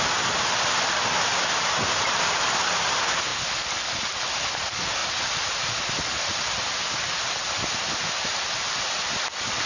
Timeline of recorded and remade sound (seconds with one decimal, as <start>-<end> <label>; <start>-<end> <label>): 0.0-9.7 recorded